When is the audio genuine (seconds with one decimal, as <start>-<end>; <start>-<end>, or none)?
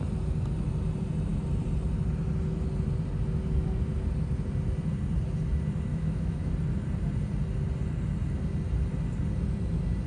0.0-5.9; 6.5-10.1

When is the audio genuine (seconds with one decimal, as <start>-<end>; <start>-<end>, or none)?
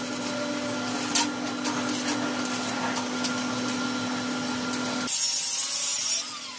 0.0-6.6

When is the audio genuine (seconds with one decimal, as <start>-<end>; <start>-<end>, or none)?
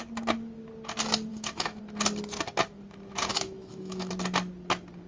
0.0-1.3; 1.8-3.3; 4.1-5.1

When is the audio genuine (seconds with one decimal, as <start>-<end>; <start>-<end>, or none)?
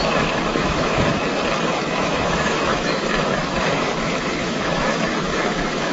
1.2-1.7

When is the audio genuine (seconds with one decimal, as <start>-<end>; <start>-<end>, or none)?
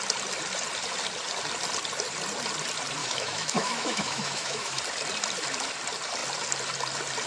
0.0-3.0; 4.8-7.3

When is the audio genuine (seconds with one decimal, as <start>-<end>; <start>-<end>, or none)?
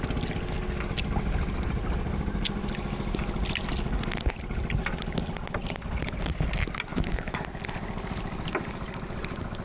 0.0-6.9; 7.4-9.6